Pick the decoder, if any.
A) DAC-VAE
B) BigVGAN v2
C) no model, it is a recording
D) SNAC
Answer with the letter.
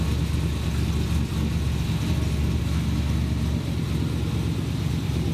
C